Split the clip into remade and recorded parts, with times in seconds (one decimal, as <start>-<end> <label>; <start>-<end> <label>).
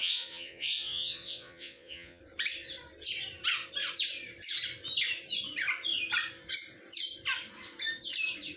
0.0-2.2 remade; 2.2-8.6 recorded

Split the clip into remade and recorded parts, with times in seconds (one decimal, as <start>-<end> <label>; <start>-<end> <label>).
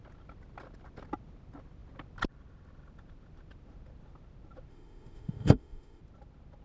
0.0-4.7 recorded; 4.7-6.0 remade; 6.0-6.6 recorded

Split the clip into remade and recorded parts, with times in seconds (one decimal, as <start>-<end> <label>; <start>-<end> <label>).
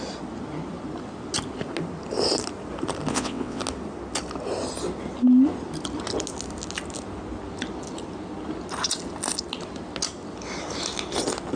0.0-3.1 recorded; 3.1-3.6 remade; 3.6-11.6 recorded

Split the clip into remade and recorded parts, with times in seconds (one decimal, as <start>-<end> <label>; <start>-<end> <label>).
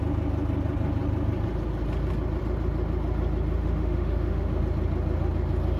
0.0-3.6 recorded; 3.6-4.6 remade; 4.6-5.8 recorded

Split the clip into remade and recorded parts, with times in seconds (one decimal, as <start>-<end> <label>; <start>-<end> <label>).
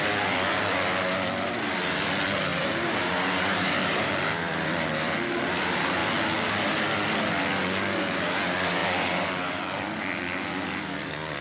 0.0-2.5 recorded; 2.5-4.1 remade; 4.1-8.8 recorded; 8.8-9.6 remade; 9.6-11.4 recorded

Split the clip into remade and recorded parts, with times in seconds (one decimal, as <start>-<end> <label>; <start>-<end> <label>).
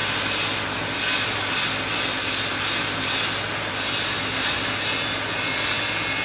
0.0-6.2 recorded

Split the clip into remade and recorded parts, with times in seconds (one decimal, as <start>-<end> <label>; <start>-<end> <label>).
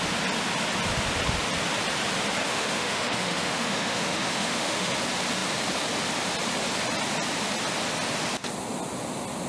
0.0-2.4 recorded; 2.4-4.9 remade; 4.9-9.5 recorded